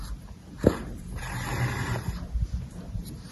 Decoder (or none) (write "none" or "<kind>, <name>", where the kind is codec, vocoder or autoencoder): vocoder, BigVGAN v2